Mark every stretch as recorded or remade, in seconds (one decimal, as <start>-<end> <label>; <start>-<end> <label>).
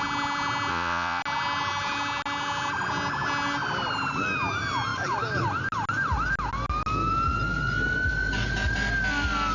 0.0-0.7 recorded; 0.7-1.2 remade; 1.2-9.5 recorded